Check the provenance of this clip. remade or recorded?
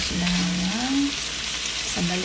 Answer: recorded